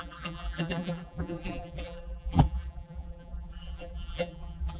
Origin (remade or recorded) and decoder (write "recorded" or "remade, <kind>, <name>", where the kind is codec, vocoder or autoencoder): remade, vocoder, BigVGAN v2